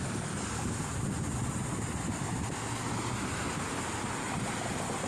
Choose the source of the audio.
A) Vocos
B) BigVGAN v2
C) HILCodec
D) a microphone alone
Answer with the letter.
D